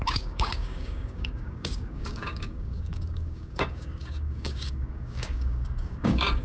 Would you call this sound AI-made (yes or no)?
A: yes